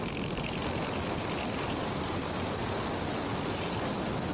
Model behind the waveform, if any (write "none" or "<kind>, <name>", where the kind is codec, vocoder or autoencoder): none